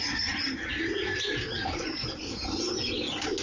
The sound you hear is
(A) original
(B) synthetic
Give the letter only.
A